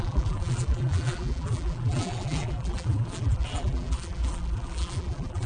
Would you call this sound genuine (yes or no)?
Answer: no